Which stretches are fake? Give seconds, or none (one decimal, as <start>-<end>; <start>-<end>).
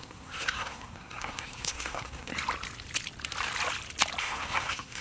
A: 0.0-2.3; 4.2-5.0